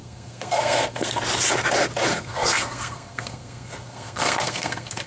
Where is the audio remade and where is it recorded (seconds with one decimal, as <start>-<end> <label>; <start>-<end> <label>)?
0.0-1.2 remade; 1.2-2.1 recorded; 2.1-5.1 remade